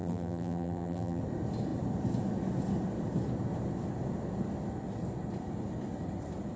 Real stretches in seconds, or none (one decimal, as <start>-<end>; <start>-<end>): 1.2-6.6